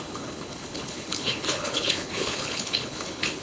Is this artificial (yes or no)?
yes